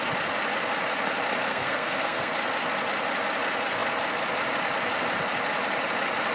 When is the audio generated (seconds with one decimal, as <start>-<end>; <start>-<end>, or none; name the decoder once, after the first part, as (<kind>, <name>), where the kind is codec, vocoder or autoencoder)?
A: 1.5-2.3 (codec, SNAC)